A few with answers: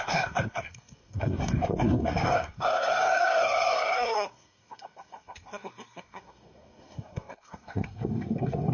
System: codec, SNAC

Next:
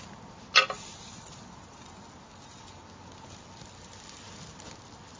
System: none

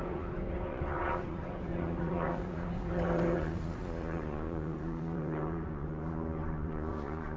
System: vocoder, Vocos